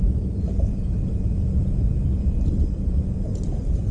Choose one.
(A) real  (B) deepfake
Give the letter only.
B